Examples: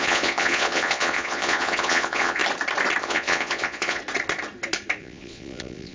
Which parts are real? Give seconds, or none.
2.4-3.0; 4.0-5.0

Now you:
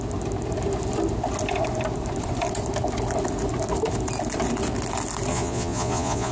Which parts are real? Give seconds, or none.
0.0-5.3